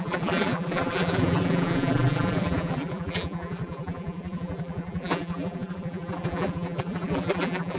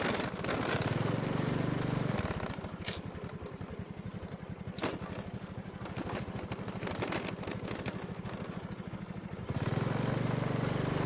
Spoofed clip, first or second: first